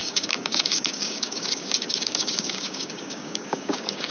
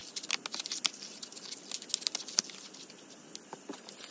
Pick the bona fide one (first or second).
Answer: second